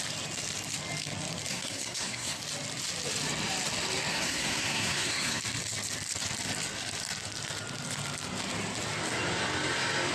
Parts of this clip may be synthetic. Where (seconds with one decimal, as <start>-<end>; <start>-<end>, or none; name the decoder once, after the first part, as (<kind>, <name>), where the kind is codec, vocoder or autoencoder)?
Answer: 1.5-2.4 (codec, SNAC); 4.1-5.4